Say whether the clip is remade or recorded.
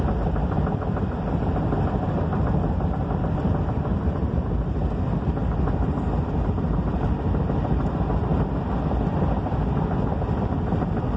recorded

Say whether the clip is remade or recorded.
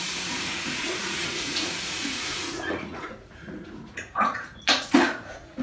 remade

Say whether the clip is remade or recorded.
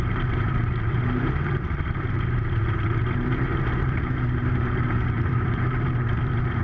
remade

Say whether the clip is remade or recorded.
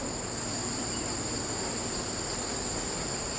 recorded